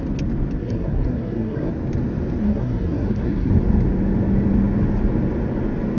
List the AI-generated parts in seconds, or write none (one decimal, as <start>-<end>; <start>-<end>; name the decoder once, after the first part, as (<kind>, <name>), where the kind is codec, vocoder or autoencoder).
0.6-1.7 (codec, SNAC); 2.4-3.5